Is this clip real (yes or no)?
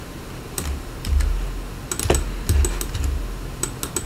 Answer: yes